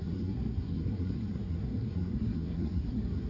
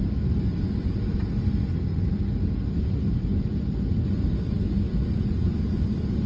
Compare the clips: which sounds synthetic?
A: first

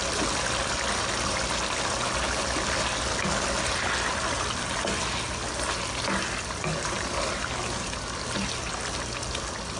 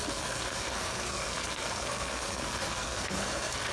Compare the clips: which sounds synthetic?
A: second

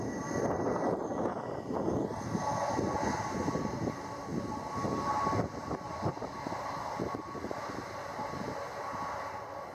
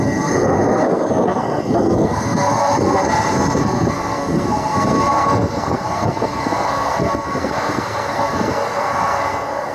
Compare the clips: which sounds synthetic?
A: second